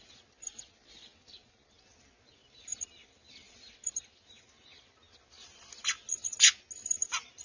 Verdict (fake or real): real